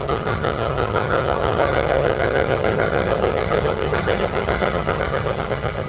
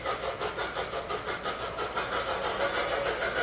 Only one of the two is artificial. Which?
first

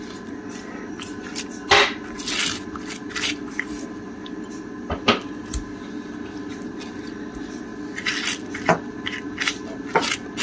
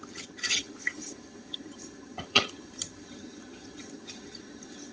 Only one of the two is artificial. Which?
second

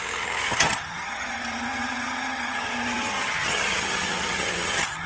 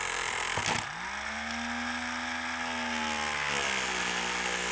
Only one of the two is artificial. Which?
first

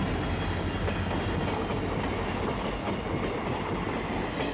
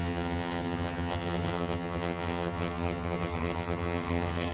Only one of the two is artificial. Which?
second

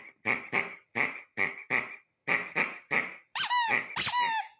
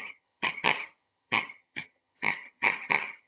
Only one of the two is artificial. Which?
second